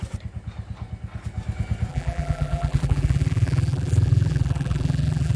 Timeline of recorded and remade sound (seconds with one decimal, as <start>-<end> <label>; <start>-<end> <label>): 0.0-1.9 recorded; 1.9-5.4 remade